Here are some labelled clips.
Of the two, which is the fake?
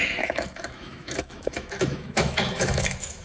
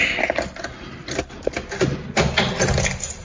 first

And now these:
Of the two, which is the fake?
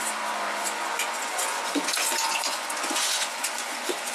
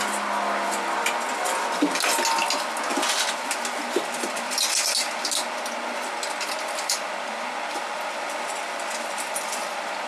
first